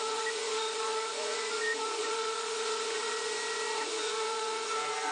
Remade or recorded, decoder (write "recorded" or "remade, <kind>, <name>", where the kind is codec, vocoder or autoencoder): remade, vocoder, Vocos